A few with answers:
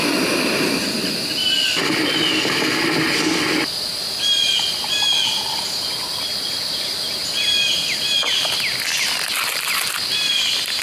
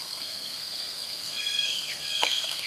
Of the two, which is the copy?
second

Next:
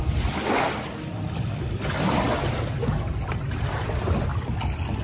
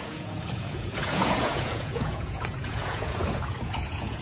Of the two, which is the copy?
second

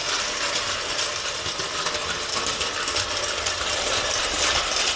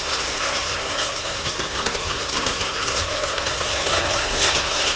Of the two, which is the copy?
second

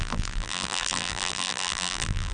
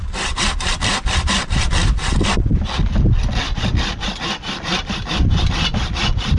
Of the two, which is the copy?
first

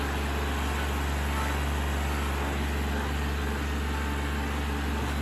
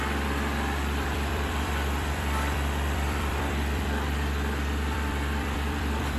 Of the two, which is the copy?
second